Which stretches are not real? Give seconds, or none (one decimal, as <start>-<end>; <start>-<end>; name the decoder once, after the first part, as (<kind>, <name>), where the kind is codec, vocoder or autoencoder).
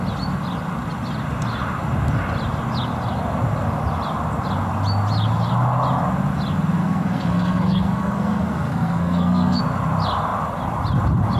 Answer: 6.8-9.6 (codec, SNAC)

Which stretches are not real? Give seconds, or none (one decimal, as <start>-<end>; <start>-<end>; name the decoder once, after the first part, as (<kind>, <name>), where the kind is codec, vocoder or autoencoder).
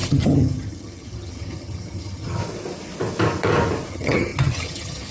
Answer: 0.0-2.4 (vocoder, HiFi-GAN); 3.9-5.1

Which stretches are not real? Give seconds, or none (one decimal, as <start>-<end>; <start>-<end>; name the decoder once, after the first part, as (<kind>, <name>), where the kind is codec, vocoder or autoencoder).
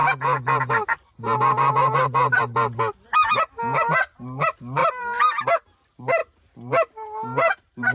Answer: 4.8-5.4 (vocoder, BigVGAN v2); 6.2-7.9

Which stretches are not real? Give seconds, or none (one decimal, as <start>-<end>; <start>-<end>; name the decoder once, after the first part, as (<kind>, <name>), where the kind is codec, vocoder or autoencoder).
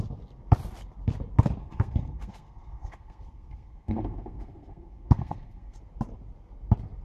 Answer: 1.6-5.8 (codec, SNAC)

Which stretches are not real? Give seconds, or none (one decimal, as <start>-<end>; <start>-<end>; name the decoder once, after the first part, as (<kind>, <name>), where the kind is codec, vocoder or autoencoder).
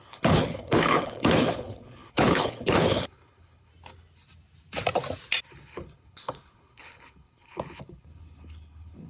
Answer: 0.0-3.7 (codec, HILCodec); 5.4-9.1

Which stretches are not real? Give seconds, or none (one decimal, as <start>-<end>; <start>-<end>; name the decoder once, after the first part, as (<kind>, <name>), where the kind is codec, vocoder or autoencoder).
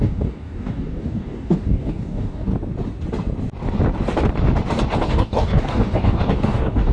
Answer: 0.0-2.5 (codec, DAC); 5.1-6.9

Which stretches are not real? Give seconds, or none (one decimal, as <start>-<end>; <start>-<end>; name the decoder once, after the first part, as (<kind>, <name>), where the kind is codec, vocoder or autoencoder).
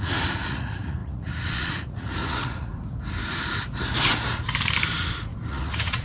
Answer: 0.0-2.7 (vocoder, Vocos); 5.5-6.0